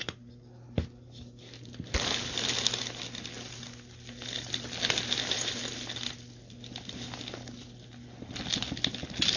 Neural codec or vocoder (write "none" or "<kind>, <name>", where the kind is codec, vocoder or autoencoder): none